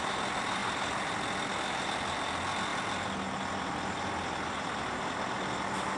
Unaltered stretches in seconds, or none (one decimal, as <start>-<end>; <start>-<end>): 0.0-6.0